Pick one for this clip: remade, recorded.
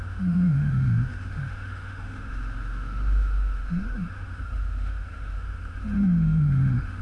remade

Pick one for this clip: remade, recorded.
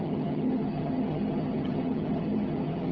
remade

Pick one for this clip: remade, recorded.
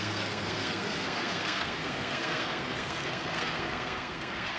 remade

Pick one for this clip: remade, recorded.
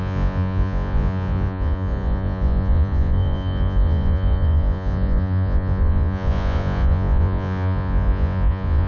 remade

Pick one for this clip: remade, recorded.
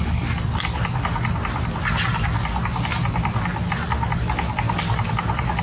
recorded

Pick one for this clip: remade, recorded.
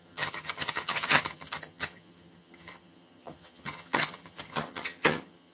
remade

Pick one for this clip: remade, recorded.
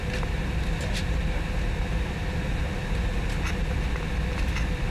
recorded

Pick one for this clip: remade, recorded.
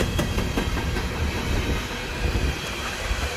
remade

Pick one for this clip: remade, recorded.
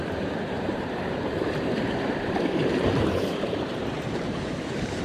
remade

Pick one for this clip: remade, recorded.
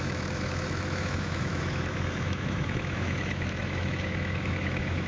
remade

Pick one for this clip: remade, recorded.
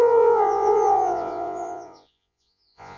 remade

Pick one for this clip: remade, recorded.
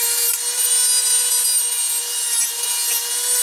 recorded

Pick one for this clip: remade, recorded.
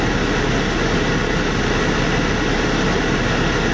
recorded